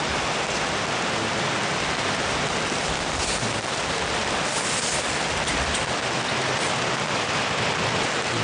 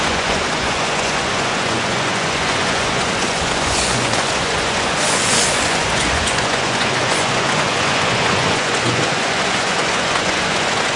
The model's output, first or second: second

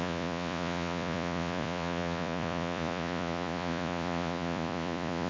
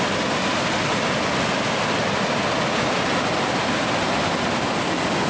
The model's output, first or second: first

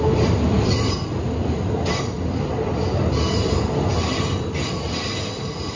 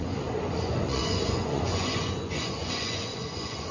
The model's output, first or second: second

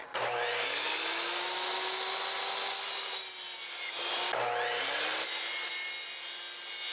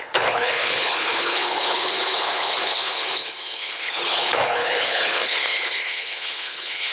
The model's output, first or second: second